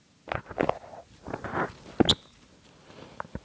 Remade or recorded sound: recorded